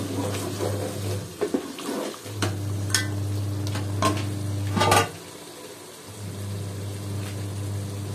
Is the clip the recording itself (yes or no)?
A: yes